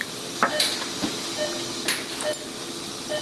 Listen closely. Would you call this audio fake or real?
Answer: real